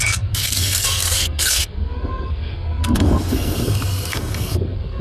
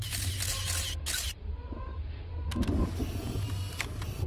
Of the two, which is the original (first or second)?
second